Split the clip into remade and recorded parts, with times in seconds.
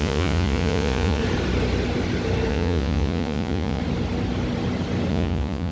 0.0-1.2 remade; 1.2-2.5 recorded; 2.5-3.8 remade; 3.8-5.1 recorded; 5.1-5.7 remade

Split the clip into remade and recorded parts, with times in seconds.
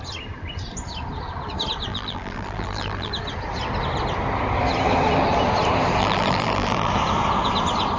0.0-1.9 recorded; 1.9-3.1 remade; 3.1-6.0 recorded; 6.0-6.9 remade; 6.9-8.0 recorded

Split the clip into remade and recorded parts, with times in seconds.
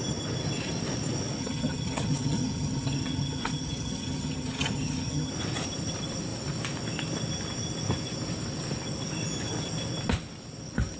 0.0-1.4 recorded; 1.4-5.3 remade; 5.3-11.0 recorded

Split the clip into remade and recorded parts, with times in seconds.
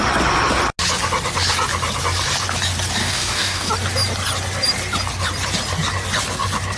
0.0-3.0 recorded; 3.0-3.7 remade; 3.7-6.8 recorded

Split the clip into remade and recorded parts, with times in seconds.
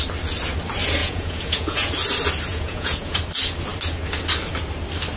0.0-1.0 recorded; 1.0-1.9 remade; 1.9-2.5 recorded; 2.5-3.2 remade; 3.2-5.2 recorded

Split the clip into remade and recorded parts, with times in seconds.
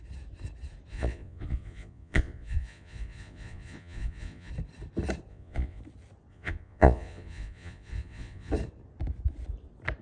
0.0-0.9 recorded; 0.9-4.5 remade; 4.5-5.3 recorded; 5.3-5.8 remade; 5.8-6.3 recorded; 6.3-8.5 remade; 8.5-10.0 recorded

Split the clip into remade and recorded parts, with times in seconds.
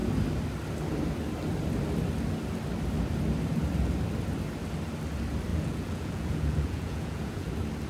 0.0-5.5 recorded; 5.5-7.5 remade; 7.5-7.9 recorded